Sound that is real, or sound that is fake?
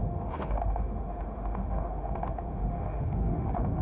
fake